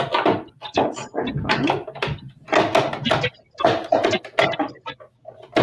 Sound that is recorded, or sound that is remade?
recorded